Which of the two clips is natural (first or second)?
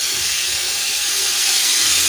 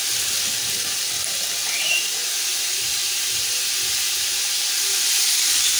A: second